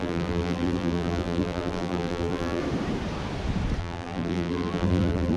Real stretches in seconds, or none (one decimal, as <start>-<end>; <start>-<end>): 2.6-3.8